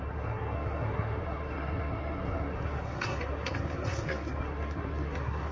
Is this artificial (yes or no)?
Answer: yes